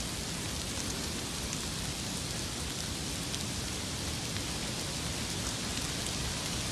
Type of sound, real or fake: real